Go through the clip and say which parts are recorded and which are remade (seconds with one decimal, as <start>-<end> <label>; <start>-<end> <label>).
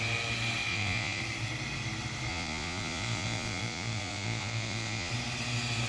0.0-0.7 recorded; 0.7-1.2 remade; 1.2-2.3 recorded; 2.3-5.1 remade; 5.1-5.9 recorded